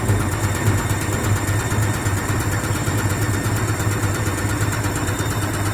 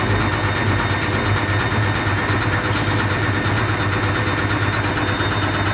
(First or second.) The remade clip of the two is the first